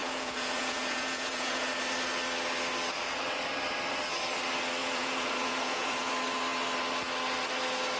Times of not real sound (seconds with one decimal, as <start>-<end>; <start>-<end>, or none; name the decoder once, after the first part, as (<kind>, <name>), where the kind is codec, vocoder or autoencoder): 0.0-1.7 (vocoder, Vocos); 4.8-6.1